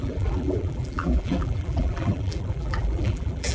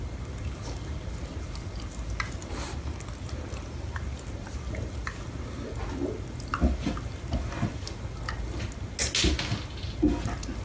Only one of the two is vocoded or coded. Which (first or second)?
first